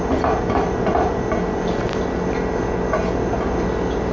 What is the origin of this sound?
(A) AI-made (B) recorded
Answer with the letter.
B